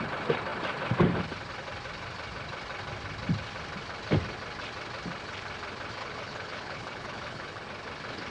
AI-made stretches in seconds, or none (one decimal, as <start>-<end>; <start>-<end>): 6.0-7.6